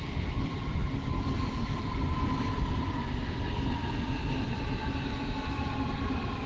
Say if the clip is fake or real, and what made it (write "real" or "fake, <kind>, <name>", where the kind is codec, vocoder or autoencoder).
real